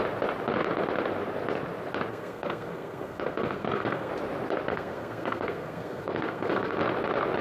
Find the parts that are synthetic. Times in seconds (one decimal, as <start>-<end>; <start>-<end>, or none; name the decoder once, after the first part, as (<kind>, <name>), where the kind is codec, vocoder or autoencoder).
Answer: 2.1-4.1 (codec, SNAC); 4.7-6.8